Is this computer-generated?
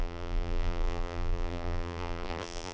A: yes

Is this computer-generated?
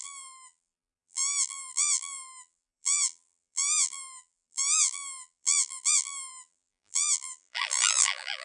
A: yes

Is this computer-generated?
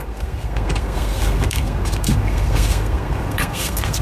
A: yes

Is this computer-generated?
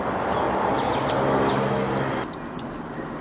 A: no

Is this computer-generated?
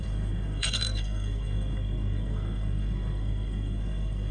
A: yes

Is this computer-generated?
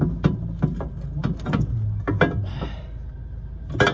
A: no